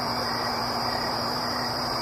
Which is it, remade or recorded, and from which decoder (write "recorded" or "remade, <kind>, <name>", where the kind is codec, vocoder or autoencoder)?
remade, vocoder, BigVGAN v2